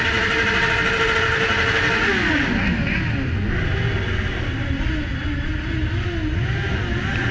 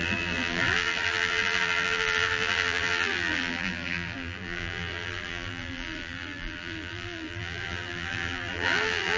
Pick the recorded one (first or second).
first